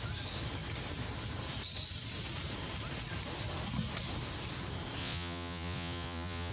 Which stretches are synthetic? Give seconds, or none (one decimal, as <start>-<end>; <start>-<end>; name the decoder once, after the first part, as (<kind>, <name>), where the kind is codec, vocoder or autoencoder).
5.0-6.5 (vocoder, Vocos)